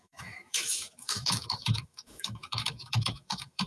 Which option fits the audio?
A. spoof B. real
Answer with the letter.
A